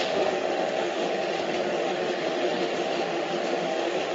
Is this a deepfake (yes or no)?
yes